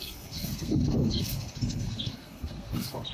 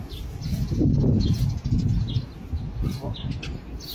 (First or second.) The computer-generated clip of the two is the first